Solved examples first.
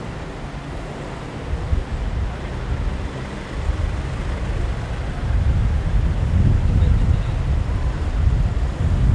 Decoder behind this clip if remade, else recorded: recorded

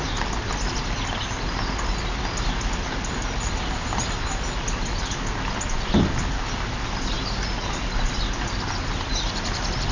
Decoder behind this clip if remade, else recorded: recorded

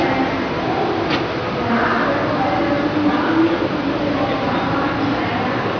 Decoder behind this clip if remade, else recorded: recorded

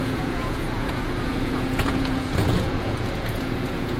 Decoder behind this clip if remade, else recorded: remade, vocoder, Vocos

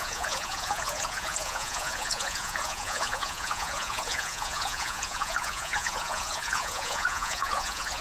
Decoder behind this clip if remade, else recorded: remade, vocoder, Vocos